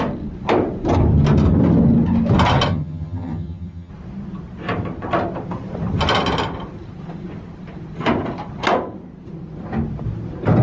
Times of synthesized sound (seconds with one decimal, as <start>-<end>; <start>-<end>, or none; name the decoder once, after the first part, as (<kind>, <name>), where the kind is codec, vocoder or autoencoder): 2.7-3.9 (vocoder, HiFi-GAN)